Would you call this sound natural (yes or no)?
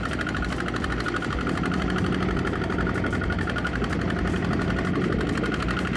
yes